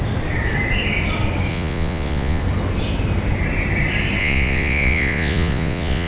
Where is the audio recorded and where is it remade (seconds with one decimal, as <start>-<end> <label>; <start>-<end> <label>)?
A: 0.0-1.5 recorded; 1.5-2.4 remade; 2.4-4.2 recorded; 4.2-6.1 remade